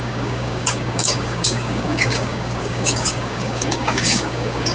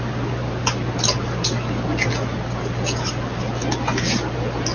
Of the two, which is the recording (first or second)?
second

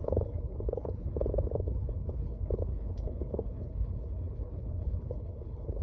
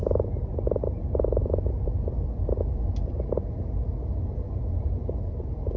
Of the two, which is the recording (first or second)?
second